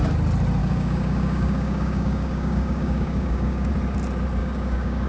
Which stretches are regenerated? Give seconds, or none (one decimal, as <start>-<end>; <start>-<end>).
0.6-3.7; 4.4-5.1